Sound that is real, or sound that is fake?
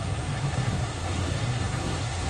fake